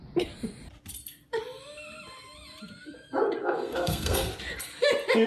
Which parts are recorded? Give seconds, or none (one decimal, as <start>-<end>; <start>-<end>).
0.0-3.4; 4.3-5.3